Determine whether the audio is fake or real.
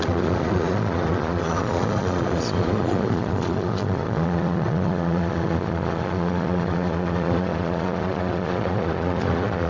fake